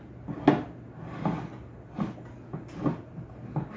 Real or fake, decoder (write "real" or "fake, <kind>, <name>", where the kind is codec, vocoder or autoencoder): real